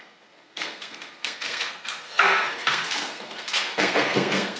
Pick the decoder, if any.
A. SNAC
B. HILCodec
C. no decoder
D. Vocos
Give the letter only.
A